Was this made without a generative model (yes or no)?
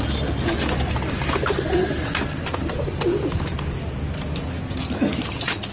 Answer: yes